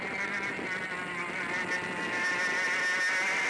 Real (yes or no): yes